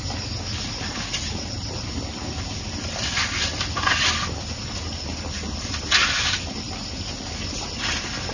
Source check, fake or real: real